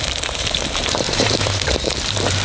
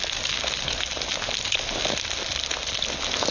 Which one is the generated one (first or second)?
first